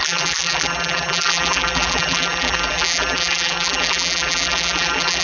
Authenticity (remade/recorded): remade